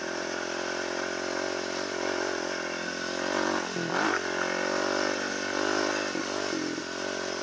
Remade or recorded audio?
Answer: recorded